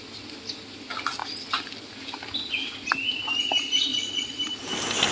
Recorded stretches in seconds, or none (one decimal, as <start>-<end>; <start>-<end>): 0.0-3.9; 4.4-5.1